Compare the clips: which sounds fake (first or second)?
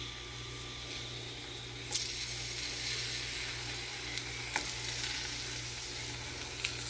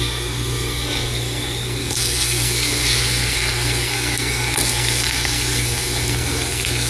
second